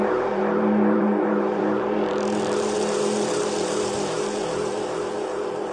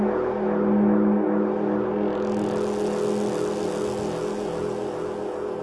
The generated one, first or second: first